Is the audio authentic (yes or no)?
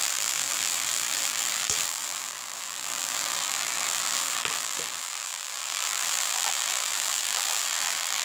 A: no